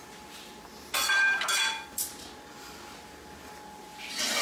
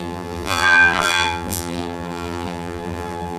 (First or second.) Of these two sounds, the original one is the first